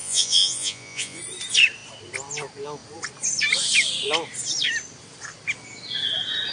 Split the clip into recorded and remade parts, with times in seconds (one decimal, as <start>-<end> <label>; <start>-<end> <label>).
0.0-1.2 remade; 1.2-6.5 recorded